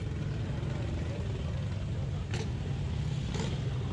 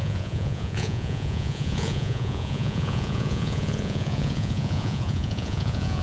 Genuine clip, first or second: first